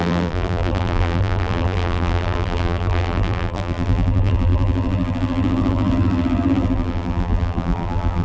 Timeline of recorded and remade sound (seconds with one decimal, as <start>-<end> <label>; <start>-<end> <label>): 0.0-8.2 remade